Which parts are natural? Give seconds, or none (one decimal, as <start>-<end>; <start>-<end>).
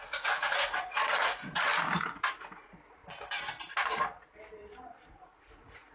1.7-2.3; 3.0-5.1